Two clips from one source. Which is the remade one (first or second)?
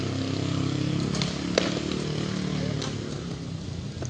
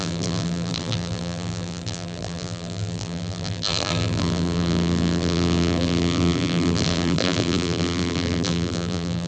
second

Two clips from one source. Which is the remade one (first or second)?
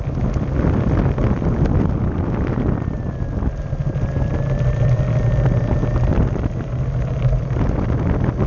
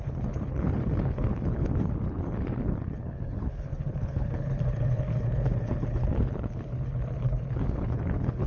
second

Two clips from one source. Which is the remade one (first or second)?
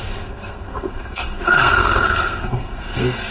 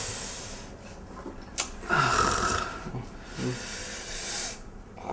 first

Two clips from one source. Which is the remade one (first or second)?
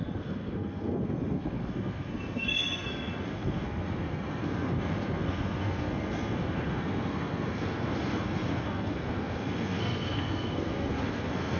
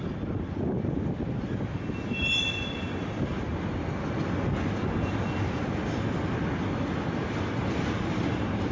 first